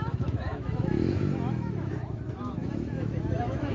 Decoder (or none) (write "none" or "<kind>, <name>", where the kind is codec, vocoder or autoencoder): autoencoder, DAC-VAE